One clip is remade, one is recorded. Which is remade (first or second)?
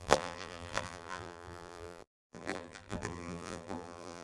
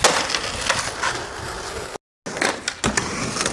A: first